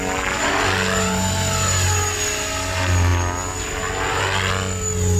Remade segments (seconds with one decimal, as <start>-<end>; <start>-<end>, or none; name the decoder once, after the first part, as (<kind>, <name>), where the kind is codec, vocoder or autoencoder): none